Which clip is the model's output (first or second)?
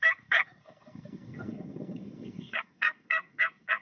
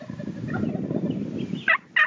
first